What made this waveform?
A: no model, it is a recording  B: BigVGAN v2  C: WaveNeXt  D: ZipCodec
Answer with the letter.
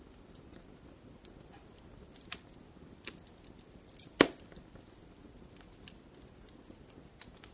A